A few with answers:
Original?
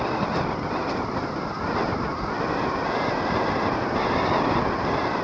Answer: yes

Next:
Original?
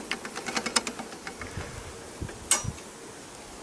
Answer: yes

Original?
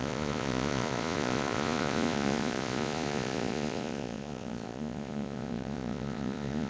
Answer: no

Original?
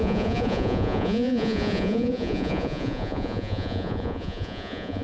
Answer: no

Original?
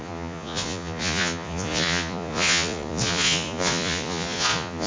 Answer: no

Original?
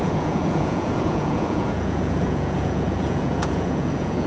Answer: no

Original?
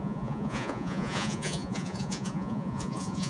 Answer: no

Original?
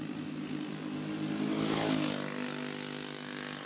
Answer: yes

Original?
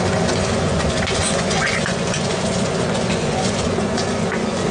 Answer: no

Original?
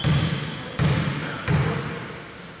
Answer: yes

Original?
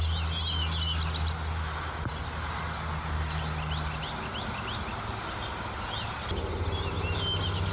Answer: yes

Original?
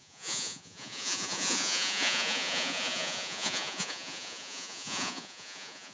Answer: no